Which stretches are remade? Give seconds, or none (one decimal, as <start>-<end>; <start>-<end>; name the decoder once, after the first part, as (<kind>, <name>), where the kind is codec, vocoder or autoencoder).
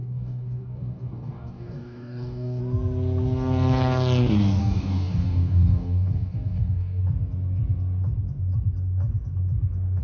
0.0-2.6 (codec, DAC); 4.6-7.0